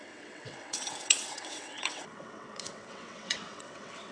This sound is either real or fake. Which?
fake